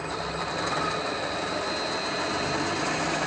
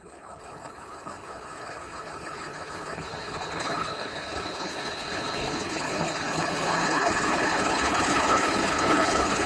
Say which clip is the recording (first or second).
first